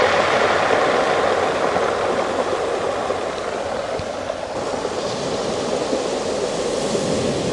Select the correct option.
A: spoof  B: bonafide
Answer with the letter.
B